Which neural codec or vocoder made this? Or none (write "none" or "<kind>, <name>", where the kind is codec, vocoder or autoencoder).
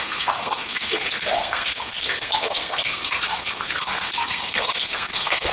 codec, SNAC